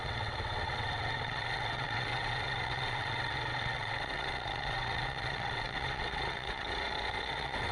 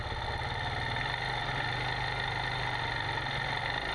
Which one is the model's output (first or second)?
first